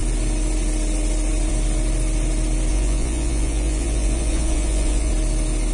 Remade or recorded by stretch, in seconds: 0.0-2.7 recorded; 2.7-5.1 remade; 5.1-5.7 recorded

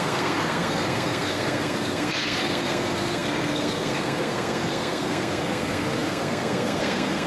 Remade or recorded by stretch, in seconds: 0.0-7.3 remade